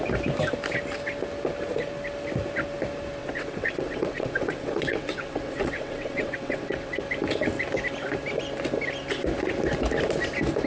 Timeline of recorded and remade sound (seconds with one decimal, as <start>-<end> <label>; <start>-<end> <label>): 0.0-3.2 recorded; 3.2-7.0 remade; 7.0-10.7 recorded